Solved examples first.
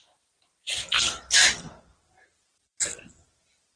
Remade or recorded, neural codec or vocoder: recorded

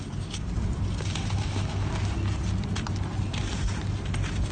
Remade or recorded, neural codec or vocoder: recorded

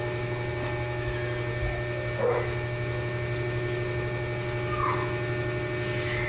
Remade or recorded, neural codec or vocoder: recorded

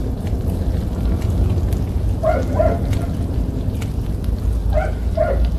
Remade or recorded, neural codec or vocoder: recorded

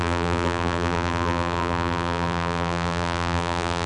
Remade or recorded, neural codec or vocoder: remade, vocoder, BigVGAN v2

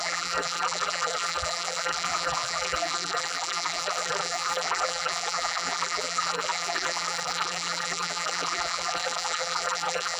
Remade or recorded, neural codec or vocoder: remade, vocoder, BigVGAN v2